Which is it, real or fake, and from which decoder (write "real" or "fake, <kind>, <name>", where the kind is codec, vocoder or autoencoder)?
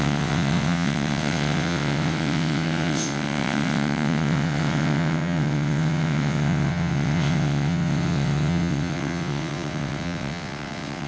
fake, vocoder, WaveNeXt